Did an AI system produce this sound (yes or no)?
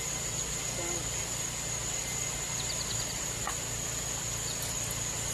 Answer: no